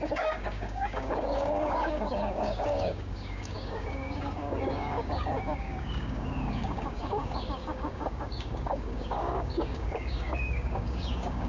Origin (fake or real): fake